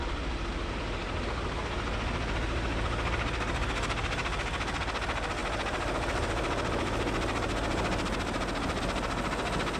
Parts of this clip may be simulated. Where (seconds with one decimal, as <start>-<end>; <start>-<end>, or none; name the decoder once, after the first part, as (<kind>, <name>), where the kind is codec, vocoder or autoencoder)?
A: none